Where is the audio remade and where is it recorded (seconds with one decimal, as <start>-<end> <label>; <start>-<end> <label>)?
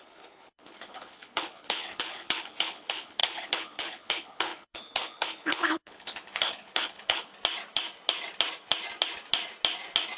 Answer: 0.0-7.3 remade; 7.3-10.2 recorded